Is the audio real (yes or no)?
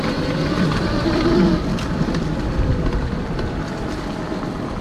yes